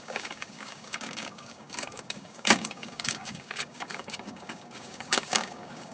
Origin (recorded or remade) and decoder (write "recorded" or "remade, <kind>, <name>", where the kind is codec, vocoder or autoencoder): remade, codec, DAC